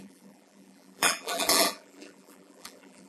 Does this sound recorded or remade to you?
remade